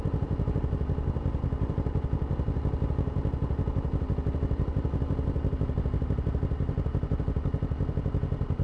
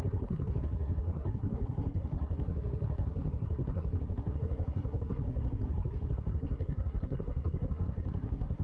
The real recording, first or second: first